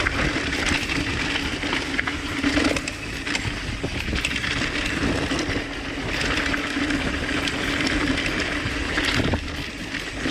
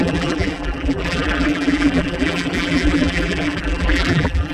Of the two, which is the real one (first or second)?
first